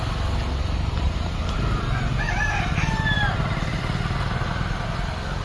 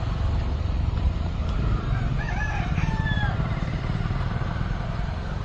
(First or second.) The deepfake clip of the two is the second